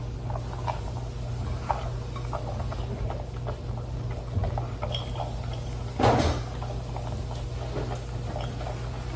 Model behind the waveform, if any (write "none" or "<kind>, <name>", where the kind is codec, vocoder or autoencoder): none